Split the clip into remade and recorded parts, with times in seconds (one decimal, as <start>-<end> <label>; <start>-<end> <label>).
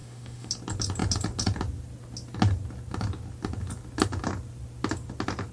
0.0-0.5 remade; 0.5-5.5 recorded